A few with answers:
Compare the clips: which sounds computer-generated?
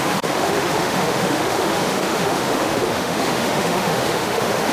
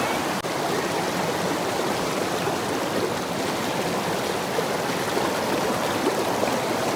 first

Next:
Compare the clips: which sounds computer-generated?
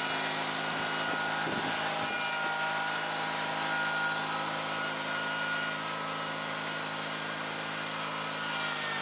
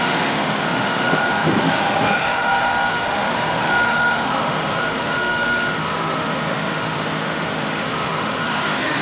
second